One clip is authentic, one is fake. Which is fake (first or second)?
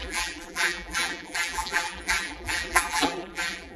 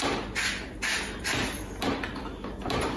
first